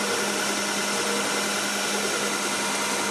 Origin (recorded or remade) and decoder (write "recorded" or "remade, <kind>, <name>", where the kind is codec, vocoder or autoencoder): recorded